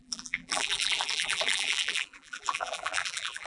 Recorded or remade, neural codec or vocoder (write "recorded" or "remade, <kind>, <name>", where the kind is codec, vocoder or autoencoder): remade, vocoder, BigVGAN v2